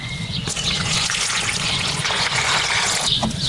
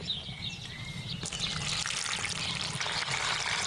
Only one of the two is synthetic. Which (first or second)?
first